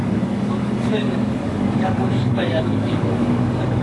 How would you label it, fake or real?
fake